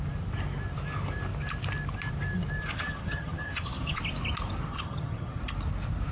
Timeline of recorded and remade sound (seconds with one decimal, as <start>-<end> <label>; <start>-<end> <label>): 0.0-2.6 recorded; 2.6-4.0 remade; 4.0-4.7 recorded; 4.7-5.4 remade; 5.4-6.1 recorded